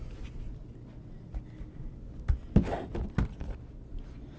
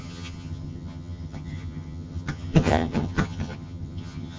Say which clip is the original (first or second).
first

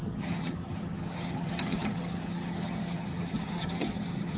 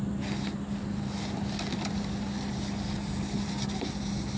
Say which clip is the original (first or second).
second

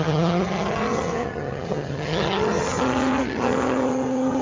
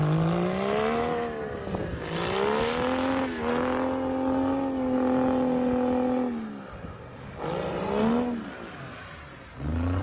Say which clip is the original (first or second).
second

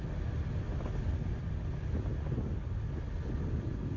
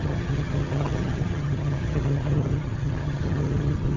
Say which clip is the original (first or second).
first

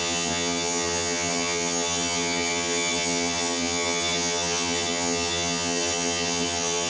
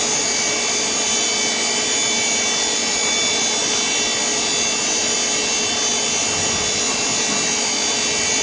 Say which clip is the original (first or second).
second